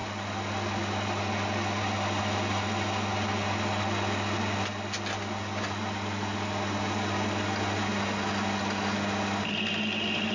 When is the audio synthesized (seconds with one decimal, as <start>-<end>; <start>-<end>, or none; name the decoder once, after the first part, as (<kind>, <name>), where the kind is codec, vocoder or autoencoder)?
none